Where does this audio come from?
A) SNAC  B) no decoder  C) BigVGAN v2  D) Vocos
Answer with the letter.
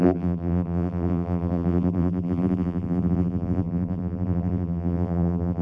C